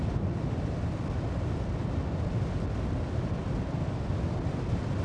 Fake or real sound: real